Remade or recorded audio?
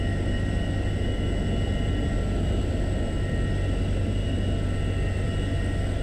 recorded